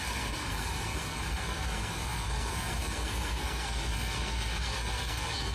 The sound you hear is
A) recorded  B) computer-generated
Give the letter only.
B